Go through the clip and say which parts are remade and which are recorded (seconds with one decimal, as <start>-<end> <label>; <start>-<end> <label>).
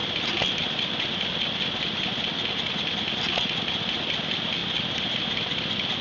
0.0-6.0 recorded